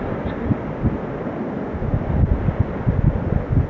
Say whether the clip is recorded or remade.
recorded